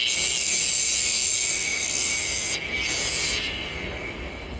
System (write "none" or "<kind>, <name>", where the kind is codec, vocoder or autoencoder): none